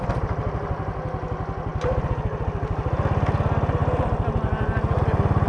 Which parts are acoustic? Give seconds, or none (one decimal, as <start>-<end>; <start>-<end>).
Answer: 0.0-5.5